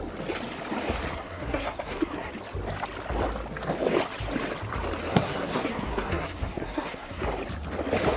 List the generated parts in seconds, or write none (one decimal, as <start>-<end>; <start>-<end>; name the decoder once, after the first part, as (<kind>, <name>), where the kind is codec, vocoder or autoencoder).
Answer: 1.1-2.3 (codec, SNAC); 5.1-7.2